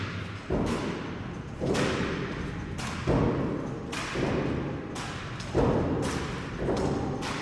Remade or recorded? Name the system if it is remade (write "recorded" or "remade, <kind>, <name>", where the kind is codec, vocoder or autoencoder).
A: recorded